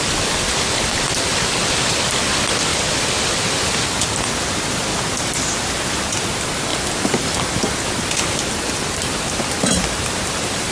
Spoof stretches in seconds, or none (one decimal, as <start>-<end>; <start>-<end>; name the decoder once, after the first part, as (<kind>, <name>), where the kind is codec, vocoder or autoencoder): none

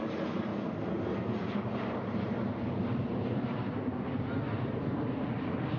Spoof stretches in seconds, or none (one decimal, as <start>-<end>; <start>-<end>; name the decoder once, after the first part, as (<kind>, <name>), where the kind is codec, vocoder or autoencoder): 0.0-0.5 (vocoder, BigVGAN v2); 2.0-3.9; 4.5-5.8

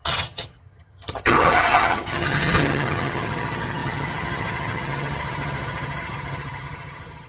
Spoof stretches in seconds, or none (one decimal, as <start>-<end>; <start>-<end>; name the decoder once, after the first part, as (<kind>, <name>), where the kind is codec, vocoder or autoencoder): 0.0-7.3 (vocoder, HiFi-GAN)

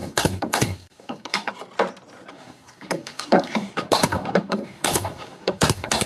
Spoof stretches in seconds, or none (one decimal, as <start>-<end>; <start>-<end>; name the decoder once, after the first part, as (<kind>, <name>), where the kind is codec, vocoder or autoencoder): 0.0-1.5 (codec, SNAC); 2.3-6.1

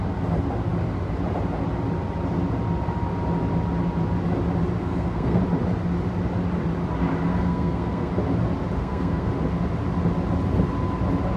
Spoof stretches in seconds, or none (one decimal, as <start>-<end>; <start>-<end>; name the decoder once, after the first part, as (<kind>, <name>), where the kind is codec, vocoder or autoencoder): 4.8-5.4 (codec, SNAC); 7.3-8.1; 8.8-9.3

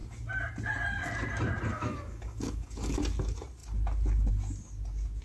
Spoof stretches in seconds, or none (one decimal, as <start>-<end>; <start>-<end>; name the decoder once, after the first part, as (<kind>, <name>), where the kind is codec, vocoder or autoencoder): 1.7-3.0 (codec, DAC)

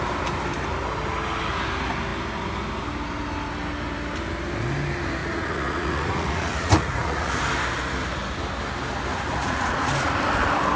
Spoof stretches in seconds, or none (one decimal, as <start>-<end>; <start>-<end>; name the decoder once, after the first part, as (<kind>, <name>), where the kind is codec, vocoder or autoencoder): 5.2-7.4 (vocoder, Vocos); 9.1-10.2